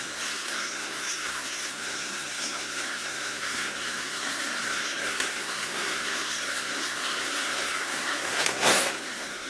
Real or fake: fake